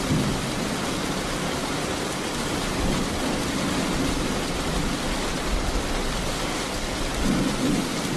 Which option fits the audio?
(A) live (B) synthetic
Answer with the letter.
A